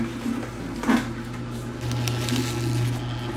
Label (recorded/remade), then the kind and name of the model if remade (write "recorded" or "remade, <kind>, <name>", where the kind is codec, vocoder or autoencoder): recorded